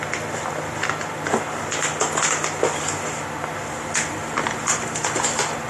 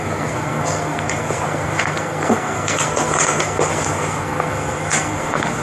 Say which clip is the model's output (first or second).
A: second